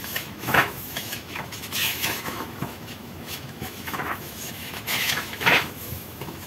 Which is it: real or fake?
fake